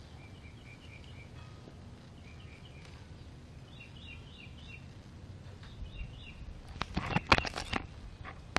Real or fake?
real